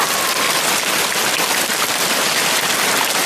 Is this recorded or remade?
recorded